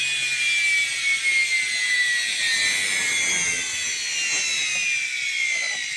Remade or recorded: recorded